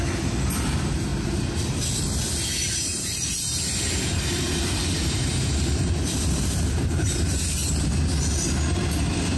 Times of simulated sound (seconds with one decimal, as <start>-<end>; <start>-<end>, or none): 2.6-7.7